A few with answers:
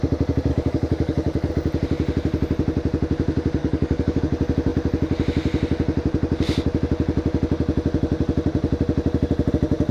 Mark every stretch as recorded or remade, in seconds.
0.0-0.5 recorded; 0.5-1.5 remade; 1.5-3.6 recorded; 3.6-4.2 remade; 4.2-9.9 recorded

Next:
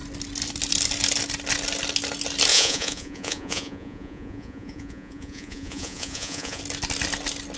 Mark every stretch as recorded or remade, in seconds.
0.0-2.5 recorded; 2.5-6.6 remade; 6.6-7.6 recorded

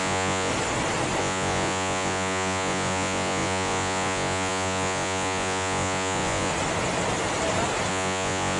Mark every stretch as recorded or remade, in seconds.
0.0-0.5 remade; 0.5-1.2 recorded; 1.2-6.5 remade; 6.5-7.9 recorded; 7.9-8.6 remade